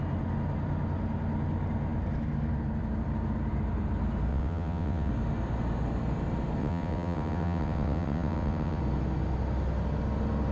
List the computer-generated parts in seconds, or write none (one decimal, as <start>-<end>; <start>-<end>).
4.3-5.1; 6.6-8.8